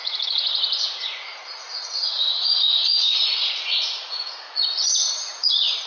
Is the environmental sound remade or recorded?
remade